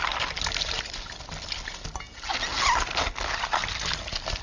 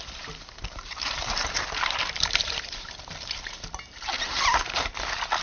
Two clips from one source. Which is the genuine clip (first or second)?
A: first